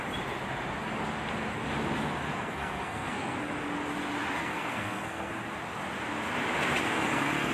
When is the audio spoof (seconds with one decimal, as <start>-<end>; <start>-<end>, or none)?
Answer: 2.2-3.4; 4.4-5.3; 6.8-7.5